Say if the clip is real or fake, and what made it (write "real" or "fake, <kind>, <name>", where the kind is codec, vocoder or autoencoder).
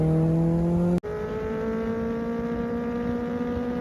real